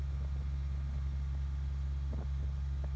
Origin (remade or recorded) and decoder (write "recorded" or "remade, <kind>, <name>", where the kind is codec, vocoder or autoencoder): recorded